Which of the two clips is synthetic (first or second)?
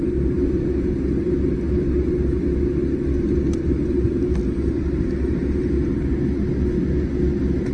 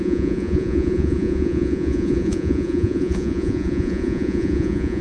second